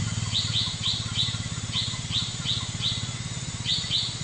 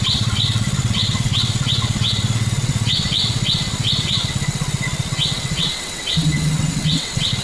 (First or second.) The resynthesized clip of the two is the second